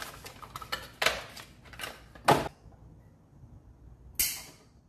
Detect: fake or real real